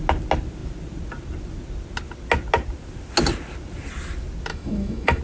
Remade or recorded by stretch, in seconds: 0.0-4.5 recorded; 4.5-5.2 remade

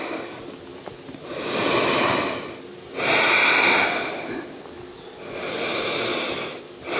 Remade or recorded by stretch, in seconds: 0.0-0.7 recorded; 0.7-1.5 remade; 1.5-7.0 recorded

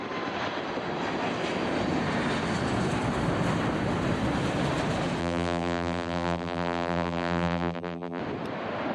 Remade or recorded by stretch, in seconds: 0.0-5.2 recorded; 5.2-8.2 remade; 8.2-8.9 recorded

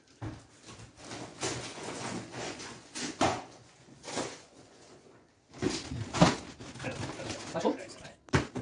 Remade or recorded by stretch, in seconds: 0.0-1.3 recorded; 1.3-5.3 remade; 5.3-8.6 recorded

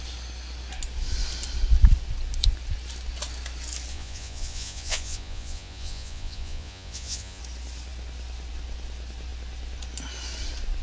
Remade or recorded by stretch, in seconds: 0.0-3.9 recorded; 3.9-7.4 remade; 7.4-10.8 recorded

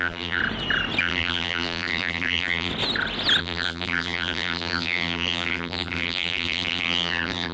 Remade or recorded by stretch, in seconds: 0.0-0.4 remade; 0.4-1.0 recorded; 1.0-2.7 remade; 2.7-3.4 recorded; 3.4-7.5 remade

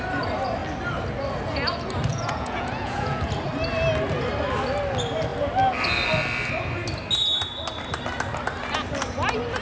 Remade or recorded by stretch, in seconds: 0.0-2.1 recorded; 2.1-3.2 remade; 3.2-9.6 recorded

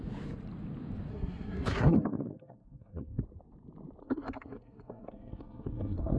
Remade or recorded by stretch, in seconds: 0.0-1.1 recorded; 1.1-3.2 remade; 3.2-4.0 recorded; 4.0-6.2 remade